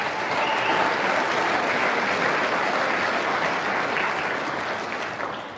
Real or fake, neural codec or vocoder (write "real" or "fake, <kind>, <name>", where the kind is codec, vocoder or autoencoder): real